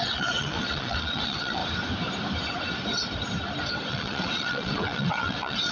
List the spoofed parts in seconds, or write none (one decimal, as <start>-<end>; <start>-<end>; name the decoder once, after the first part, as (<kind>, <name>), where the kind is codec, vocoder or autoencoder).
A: 0.0-1.6 (vocoder, WaveNeXt); 3.9-5.7